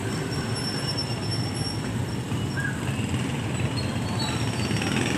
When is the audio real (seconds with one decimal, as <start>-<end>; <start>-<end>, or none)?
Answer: none